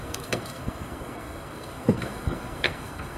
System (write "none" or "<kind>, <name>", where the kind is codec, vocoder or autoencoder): codec, SNAC